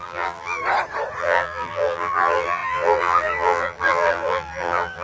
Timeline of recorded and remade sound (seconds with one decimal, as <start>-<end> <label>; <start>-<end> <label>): 0.0-0.6 remade; 0.6-1.2 recorded; 1.2-5.0 remade

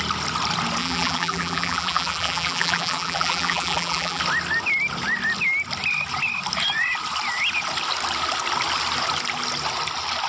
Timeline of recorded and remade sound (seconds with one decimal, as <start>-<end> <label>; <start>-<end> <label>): 0.0-0.8 recorded; 0.8-4.2 remade; 4.2-10.3 recorded